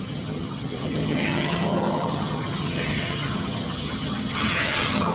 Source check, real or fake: fake